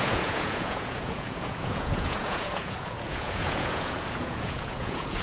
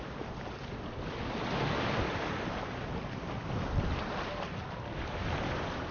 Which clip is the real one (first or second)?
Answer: second